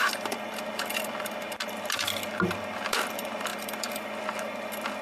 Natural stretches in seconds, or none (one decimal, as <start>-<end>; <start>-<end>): 0.0-5.0